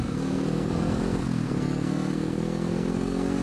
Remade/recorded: remade